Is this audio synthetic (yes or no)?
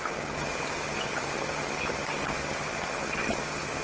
yes